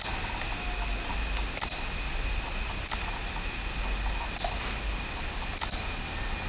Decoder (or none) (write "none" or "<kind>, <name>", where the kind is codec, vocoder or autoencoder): none